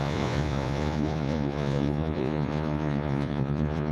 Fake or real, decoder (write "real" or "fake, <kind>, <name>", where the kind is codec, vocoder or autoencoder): fake, vocoder, Vocos